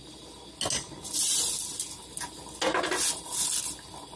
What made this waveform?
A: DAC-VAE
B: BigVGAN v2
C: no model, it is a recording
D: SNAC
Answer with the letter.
C